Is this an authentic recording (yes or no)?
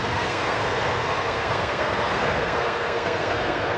no